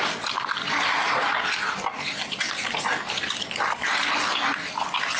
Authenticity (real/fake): real